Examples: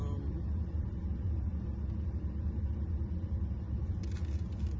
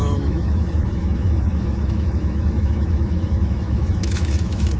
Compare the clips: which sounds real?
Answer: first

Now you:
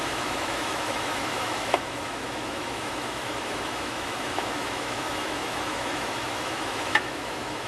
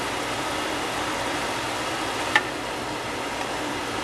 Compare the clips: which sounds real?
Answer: second